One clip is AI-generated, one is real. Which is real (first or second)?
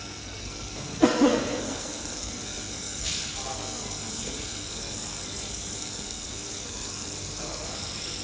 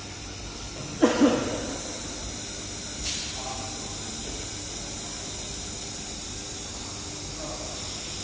second